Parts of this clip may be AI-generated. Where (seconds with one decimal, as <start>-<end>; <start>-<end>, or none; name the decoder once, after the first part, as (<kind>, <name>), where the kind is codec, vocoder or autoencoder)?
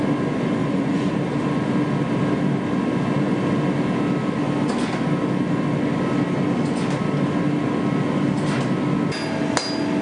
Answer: 0.6-1.1 (vocoder, Vocos)